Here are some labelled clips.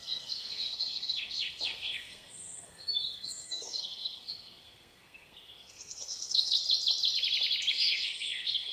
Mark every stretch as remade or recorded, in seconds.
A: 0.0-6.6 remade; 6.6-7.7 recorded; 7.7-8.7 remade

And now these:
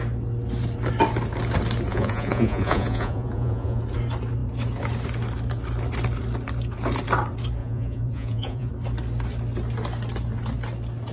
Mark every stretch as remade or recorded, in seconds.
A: 0.0-1.9 recorded; 1.9-3.8 remade; 3.8-7.6 recorded; 7.6-8.7 remade; 8.7-11.1 recorded

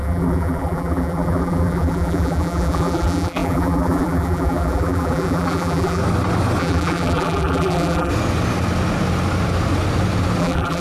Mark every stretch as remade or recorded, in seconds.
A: 0.0-6.0 remade; 6.0-6.6 recorded; 6.6-8.1 remade; 8.1-10.4 recorded; 10.4-10.8 remade

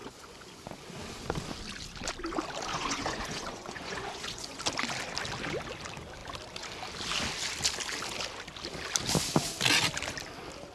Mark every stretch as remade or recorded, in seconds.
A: 0.0-0.7 remade; 0.7-2.7 recorded; 2.7-4.6 remade; 4.6-10.7 recorded

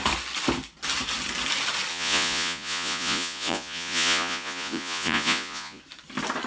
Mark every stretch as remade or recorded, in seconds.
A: 0.0-1.9 recorded; 1.9-5.8 remade; 5.8-6.5 recorded

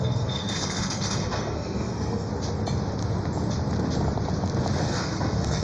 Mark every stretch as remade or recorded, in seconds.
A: 0.0-2.3 remade; 2.3-4.8 recorded; 4.8-5.6 remade

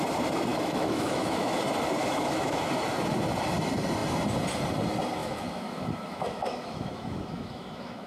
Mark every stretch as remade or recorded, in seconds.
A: 0.0-0.5 recorded; 0.5-1.6 remade; 1.6-2.0 recorded; 2.0-2.6 remade; 2.6-5.2 recorded; 5.2-8.1 remade